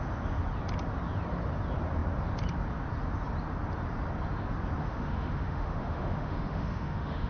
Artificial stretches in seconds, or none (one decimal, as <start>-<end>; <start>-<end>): 4.8-7.3